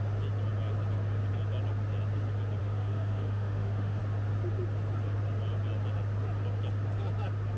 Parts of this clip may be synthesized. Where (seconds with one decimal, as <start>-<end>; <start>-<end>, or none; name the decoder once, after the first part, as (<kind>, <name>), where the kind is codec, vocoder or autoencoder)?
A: 2.6-4.0 (autoencoder, DAC-VAE)